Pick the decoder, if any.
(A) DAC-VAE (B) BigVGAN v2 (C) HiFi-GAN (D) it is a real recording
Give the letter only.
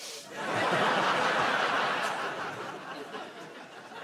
D